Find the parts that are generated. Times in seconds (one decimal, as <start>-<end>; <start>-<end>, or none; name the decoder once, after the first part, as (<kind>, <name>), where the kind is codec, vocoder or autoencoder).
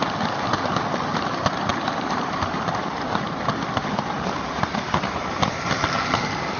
1.7-5.7 (vocoder, BigVGAN v2)